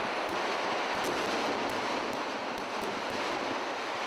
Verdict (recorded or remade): recorded